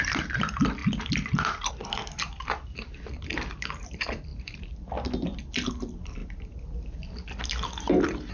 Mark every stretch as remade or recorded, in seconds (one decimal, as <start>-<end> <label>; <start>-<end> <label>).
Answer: 0.0-6.2 remade; 6.2-8.3 recorded